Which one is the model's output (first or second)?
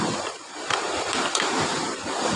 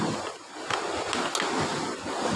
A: first